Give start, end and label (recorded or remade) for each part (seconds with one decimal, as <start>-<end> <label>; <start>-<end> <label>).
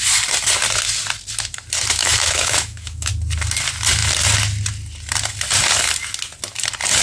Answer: 0.0-2.0 recorded; 2.0-3.1 remade; 3.1-7.0 recorded